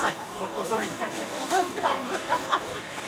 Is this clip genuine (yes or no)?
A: no